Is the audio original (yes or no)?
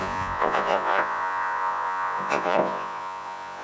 no